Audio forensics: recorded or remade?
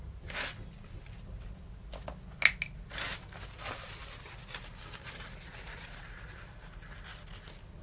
recorded